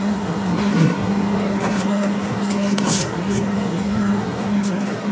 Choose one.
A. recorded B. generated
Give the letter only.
B